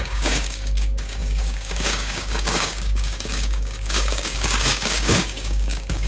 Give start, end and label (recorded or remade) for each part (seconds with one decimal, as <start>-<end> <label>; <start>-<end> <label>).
0.0-6.1 remade